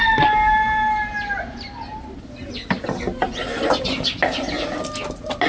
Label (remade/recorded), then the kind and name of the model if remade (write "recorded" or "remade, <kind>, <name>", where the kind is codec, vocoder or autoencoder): recorded